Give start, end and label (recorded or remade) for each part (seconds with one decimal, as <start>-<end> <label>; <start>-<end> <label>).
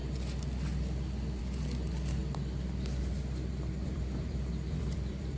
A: 0.0-1.4 recorded; 1.4-2.2 remade; 2.2-3.0 recorded; 3.0-5.4 remade